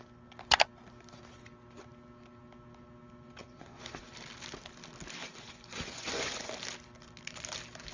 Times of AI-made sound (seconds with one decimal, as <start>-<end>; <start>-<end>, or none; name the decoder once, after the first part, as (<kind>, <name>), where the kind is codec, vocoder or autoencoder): 3.4-4.1 (vocoder, Vocos); 5.2-6.5